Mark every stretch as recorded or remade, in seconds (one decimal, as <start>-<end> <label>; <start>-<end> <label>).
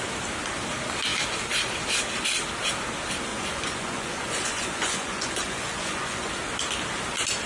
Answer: 0.0-3.3 recorded; 3.3-6.3 remade; 6.3-7.5 recorded